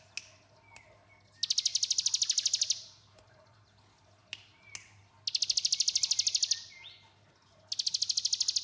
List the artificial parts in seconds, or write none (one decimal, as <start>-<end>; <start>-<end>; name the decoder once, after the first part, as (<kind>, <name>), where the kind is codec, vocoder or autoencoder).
none